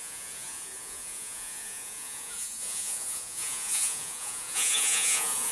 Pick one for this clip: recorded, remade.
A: remade